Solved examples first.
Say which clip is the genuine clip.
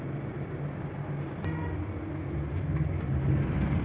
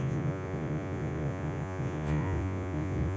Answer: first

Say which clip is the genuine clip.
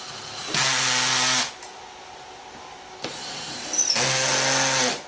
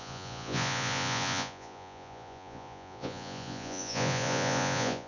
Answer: first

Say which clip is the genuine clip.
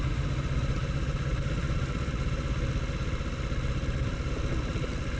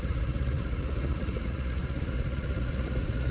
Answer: first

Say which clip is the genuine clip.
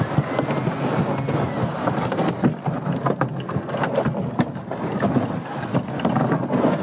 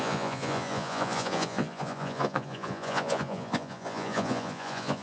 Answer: first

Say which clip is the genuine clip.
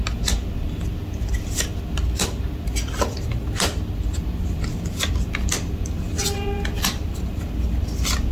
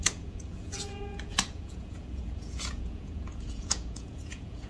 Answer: first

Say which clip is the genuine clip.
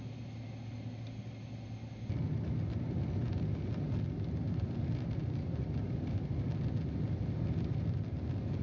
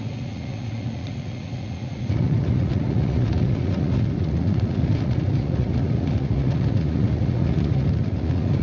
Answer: first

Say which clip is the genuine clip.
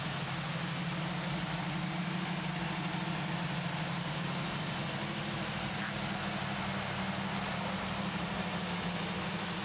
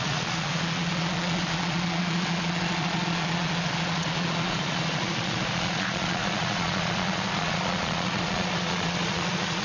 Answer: first